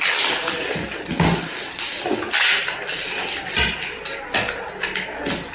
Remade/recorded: recorded